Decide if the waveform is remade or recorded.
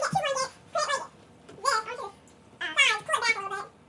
recorded